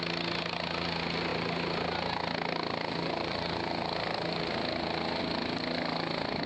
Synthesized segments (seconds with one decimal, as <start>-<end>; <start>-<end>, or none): none